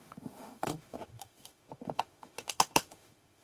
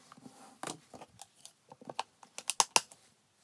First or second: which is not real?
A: first